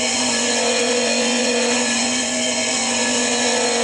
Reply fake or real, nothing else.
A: fake